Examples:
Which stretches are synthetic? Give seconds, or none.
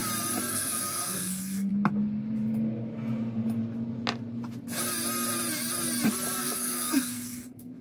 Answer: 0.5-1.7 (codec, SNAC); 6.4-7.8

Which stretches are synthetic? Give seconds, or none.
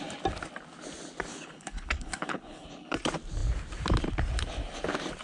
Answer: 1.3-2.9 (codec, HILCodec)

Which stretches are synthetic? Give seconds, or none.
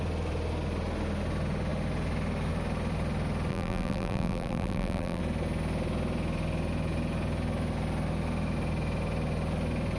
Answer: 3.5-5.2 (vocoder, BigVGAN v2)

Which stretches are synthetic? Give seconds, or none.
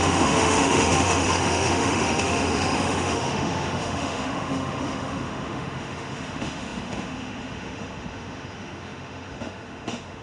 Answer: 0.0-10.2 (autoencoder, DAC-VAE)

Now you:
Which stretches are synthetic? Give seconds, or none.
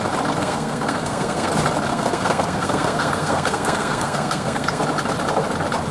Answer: 0.4-1.5 (codec, SNAC); 1.9-4.8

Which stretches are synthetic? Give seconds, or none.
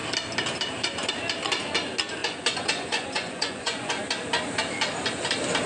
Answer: 2.2-4.0 (vocoder, Vocos)